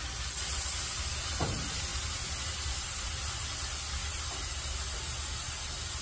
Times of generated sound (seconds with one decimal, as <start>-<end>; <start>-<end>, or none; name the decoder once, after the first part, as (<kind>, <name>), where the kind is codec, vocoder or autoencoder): none

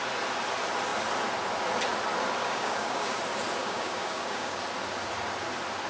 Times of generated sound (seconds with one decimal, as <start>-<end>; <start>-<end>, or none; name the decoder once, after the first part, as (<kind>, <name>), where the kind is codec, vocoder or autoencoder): 2.4-3.2 (codec, DAC); 3.6-4.6

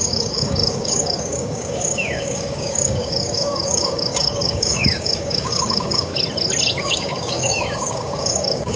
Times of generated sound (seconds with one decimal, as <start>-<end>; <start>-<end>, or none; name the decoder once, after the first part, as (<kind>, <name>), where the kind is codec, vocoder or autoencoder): 0.0-6.1 (codec, DAC); 6.8-8.8